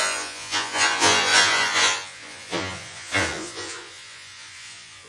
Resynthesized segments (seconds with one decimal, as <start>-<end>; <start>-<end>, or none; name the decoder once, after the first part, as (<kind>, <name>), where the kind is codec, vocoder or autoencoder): 0.0-5.1 (vocoder, Vocos)